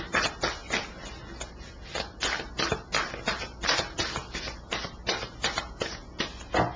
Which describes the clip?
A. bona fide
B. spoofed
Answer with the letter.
A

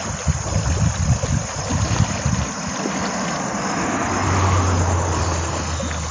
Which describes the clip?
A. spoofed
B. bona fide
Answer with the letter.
B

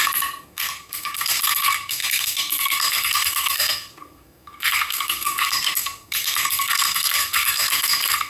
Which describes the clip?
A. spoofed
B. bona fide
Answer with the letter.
A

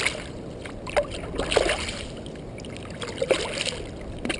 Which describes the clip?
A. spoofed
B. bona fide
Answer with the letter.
B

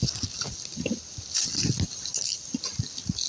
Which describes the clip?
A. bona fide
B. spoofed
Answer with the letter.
A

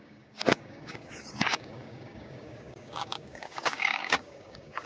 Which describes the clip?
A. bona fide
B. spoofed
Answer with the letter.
B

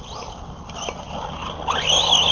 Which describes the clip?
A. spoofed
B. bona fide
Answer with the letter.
B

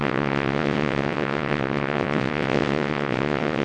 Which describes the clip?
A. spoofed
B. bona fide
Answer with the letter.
A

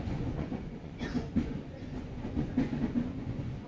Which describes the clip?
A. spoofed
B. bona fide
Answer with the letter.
A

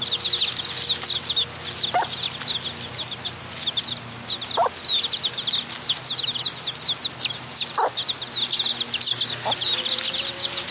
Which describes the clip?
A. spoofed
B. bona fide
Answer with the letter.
B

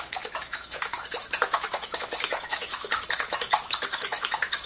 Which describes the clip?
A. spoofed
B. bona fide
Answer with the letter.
A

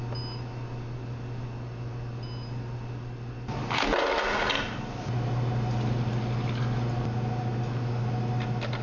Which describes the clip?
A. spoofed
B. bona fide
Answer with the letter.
B